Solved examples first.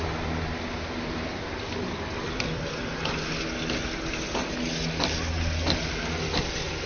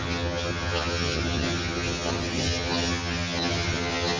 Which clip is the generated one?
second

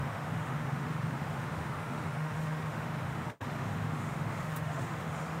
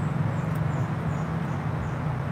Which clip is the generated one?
first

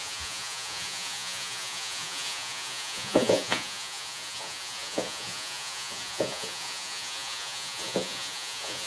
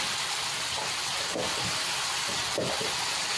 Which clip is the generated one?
first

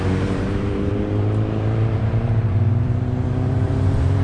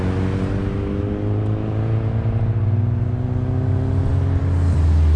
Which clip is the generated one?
first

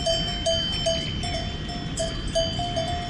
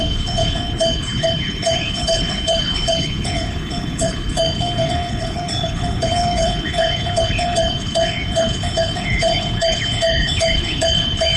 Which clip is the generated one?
second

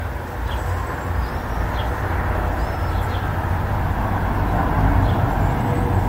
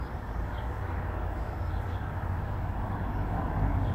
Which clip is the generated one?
second